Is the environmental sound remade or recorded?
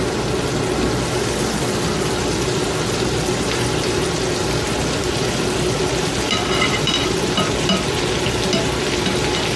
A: recorded